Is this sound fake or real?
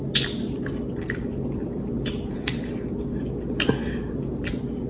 real